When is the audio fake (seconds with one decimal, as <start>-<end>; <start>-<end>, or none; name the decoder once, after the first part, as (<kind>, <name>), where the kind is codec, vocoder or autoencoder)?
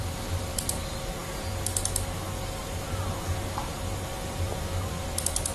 none